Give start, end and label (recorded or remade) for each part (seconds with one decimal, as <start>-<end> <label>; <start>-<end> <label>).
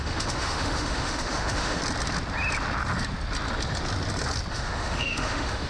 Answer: 0.0-1.8 remade; 1.8-4.5 recorded; 4.5-5.7 remade